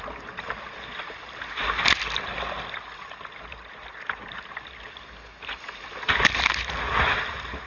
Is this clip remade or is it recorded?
recorded